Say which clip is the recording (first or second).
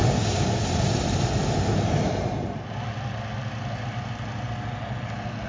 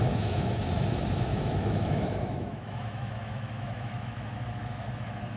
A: first